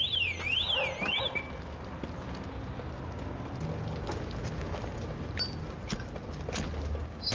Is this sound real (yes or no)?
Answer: yes